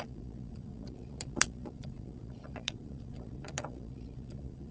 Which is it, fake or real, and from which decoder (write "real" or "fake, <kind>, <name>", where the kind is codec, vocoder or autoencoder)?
fake, vocoder, Vocos